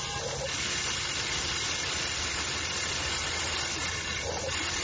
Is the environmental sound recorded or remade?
recorded